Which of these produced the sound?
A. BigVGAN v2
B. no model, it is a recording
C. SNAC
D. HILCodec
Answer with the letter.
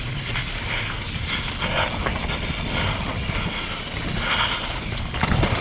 B